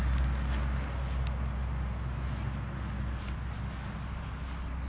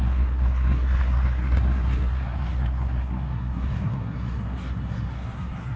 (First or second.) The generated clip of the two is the second